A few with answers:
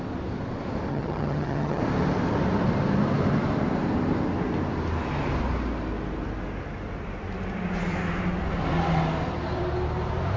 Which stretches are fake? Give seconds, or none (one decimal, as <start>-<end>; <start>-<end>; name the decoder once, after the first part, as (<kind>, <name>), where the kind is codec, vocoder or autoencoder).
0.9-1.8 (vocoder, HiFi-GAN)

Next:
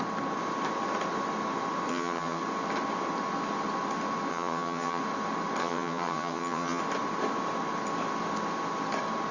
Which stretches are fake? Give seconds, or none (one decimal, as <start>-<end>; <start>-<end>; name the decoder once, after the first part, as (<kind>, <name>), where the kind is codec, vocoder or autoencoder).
1.9-2.4 (vocoder, HiFi-GAN); 4.3-5.0; 5.6-6.8

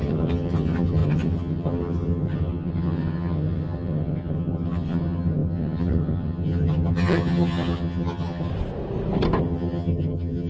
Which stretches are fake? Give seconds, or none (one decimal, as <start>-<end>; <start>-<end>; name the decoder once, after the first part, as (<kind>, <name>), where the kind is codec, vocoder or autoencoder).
0.0-8.5 (vocoder, HiFi-GAN); 9.4-10.5

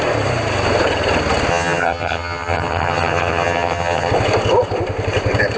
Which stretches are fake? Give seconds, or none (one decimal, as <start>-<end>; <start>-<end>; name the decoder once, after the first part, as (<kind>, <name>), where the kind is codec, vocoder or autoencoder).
1.5-4.1 (vocoder, HiFi-GAN)

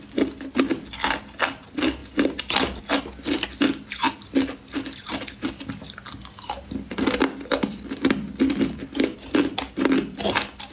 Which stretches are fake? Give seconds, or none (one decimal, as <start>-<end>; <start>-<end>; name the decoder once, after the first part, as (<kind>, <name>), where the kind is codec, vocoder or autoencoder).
none

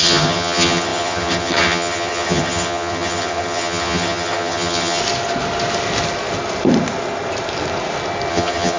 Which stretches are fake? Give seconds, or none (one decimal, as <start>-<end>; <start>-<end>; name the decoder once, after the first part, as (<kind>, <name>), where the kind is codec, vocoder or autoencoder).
0.0-5.0 (vocoder, HiFi-GAN); 8.3-8.8

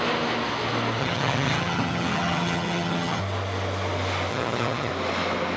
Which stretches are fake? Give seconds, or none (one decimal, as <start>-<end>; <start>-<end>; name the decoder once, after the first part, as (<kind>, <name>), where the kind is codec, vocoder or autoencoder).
1.0-3.2 (vocoder, HiFi-GAN); 4.3-4.9

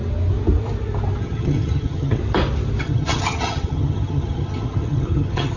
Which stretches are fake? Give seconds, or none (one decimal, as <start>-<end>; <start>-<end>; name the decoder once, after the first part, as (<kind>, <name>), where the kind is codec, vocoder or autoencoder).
1.2-2.2 (vocoder, HiFi-GAN); 2.8-5.6